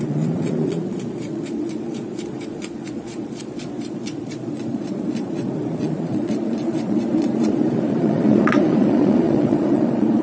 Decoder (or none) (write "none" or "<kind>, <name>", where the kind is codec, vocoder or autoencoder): vocoder, Vocos